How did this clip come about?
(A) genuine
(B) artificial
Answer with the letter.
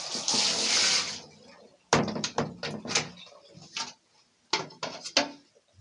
A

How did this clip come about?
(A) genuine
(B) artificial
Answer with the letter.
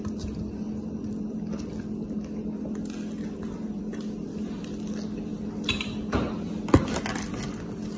A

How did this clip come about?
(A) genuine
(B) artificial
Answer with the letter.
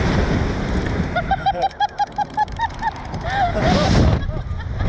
B